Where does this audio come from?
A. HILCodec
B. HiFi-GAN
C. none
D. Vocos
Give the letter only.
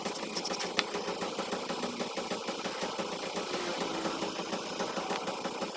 C